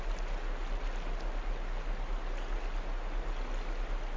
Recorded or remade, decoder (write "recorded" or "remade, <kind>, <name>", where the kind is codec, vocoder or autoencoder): recorded